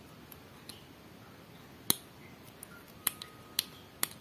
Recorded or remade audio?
recorded